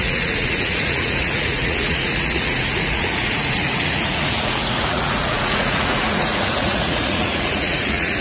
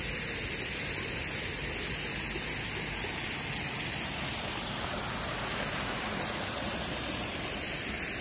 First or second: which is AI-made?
first